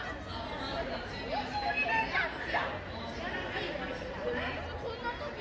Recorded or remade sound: recorded